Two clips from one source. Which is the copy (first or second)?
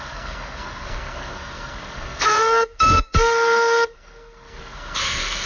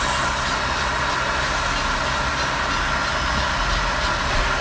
first